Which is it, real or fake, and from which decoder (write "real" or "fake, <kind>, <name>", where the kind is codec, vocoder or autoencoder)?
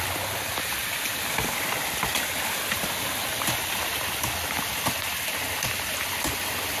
real